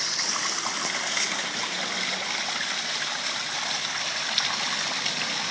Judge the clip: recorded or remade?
recorded